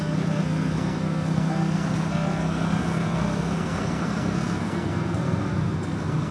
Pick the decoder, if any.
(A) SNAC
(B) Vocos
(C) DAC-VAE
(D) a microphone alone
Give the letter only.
A